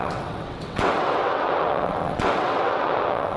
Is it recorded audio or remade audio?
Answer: remade